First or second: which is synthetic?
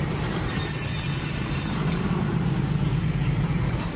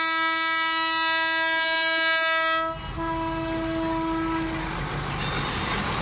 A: first